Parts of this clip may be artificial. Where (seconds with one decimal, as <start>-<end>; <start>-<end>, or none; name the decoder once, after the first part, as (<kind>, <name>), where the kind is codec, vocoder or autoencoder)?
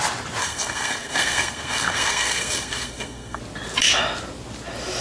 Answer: 0.4-3.4 (codec, SNAC)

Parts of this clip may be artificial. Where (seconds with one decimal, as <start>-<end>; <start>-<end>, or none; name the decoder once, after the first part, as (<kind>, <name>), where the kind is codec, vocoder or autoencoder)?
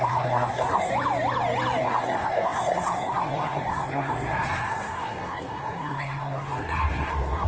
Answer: 0.0-0.9 (codec, SNAC); 1.8-7.5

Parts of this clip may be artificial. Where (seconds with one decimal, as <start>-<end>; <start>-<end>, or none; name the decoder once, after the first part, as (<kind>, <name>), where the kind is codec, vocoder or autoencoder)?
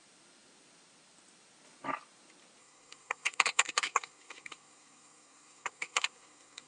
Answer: 2.6-6.7 (codec, SNAC)